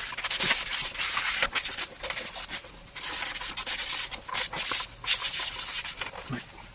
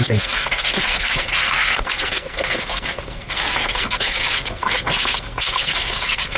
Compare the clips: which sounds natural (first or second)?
first